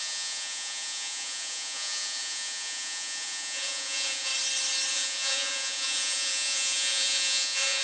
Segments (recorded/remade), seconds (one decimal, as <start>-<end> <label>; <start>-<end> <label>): 0.0-4.3 remade; 4.3-4.9 recorded; 4.9-7.8 remade